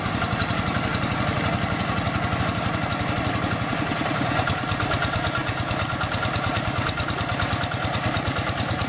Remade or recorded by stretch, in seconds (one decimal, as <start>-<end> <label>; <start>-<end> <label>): 0.0-8.9 recorded